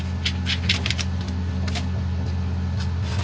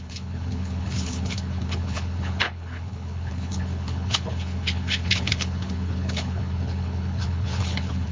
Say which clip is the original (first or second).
first